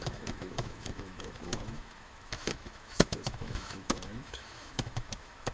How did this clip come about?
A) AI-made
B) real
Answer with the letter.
A